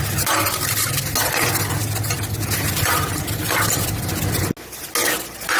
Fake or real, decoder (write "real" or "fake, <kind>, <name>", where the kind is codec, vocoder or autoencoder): real